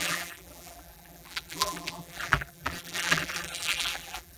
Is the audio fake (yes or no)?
yes